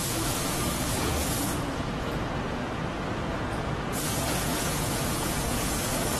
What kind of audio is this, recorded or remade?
remade